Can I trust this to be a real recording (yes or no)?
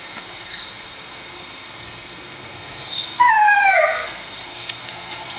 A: no